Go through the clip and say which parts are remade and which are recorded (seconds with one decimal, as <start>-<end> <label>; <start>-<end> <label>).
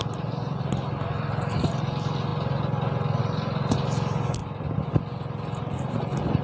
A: 0.0-4.4 recorded; 4.4-4.9 remade; 4.9-6.4 recorded